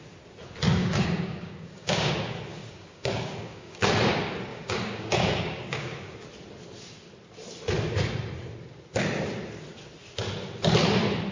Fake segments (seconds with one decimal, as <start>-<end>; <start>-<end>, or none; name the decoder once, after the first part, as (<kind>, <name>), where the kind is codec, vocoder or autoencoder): 0.8-2.1 (codec, DAC); 2.5-3.9; 4.5-6.1